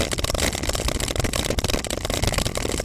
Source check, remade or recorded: recorded